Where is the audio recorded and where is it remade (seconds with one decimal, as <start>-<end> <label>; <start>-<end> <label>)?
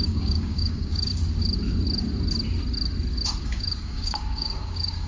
0.0-1.1 remade; 1.1-3.4 recorded; 3.4-5.1 remade